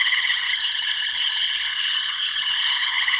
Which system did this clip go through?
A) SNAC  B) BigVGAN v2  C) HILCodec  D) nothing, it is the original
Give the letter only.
C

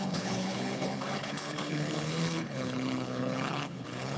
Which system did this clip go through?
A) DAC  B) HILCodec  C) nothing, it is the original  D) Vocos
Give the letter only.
B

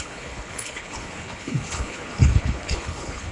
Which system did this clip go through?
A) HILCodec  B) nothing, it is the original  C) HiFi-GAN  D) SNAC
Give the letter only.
A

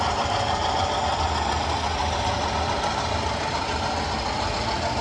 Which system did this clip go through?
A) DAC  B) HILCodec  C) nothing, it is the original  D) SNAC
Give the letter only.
C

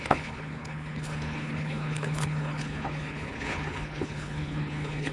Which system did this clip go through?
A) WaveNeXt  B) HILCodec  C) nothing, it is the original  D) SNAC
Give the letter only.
B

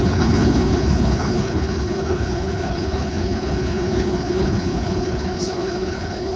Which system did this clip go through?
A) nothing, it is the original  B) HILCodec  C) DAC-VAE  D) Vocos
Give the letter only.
B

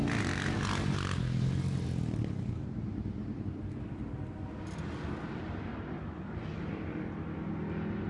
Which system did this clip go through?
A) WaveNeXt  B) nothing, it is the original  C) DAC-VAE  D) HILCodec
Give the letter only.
B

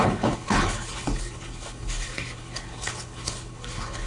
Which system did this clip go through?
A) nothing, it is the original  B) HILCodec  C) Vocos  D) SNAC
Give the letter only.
B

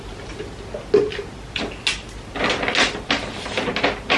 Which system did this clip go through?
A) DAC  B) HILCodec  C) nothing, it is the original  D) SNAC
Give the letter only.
C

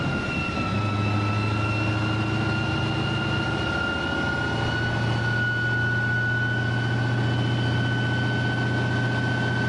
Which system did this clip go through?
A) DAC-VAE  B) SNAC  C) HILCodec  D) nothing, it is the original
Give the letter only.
D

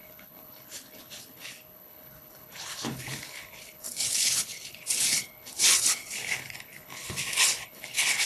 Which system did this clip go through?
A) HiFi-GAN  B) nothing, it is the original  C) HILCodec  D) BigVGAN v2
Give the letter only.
C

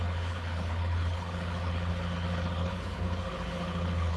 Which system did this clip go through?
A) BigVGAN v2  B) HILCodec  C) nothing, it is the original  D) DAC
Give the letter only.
B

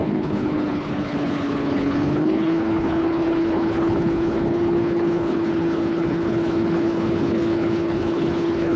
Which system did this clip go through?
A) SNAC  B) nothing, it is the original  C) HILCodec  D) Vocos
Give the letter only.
C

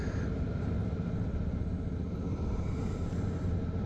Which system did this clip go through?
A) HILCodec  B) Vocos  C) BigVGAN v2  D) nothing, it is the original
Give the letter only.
D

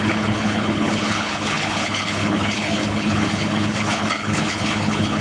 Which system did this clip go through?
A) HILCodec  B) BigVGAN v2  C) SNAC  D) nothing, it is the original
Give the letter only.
A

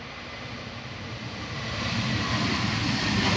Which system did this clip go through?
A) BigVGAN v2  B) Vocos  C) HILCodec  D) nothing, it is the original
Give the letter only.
D